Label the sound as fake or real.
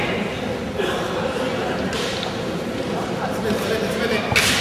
real